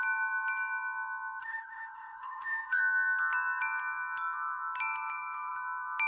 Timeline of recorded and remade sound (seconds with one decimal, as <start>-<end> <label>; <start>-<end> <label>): 0.0-1.4 recorded; 1.4-2.8 remade; 2.8-6.1 recorded